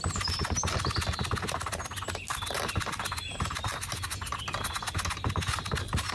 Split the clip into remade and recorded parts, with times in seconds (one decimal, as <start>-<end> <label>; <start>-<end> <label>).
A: 0.0-6.1 recorded